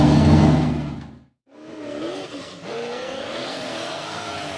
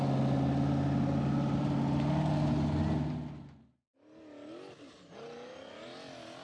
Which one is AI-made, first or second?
first